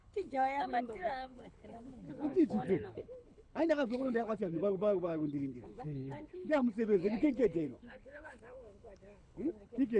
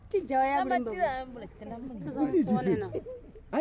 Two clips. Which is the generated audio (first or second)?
first